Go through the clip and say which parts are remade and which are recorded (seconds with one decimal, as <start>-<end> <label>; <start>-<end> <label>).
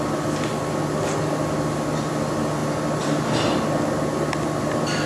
0.0-5.1 recorded